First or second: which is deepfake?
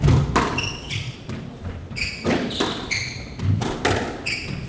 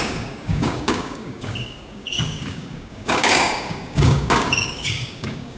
second